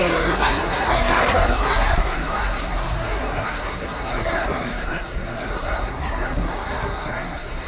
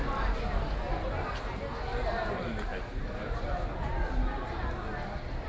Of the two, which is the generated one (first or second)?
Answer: first